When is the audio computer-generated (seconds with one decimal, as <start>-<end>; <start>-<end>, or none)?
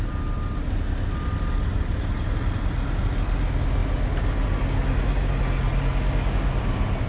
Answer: none